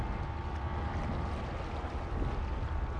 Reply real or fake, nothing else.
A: real